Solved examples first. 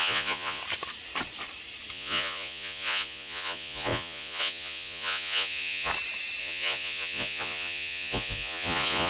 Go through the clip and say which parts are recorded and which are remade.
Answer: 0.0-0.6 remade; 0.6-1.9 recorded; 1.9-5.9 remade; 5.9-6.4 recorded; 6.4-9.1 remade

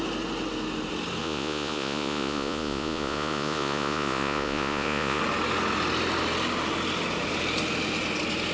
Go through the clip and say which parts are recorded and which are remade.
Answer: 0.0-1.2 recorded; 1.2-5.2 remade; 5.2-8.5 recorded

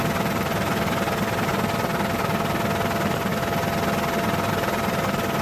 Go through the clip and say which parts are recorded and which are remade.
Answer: 0.0-5.4 recorded